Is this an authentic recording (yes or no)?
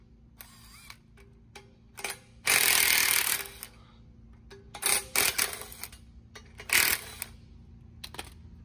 yes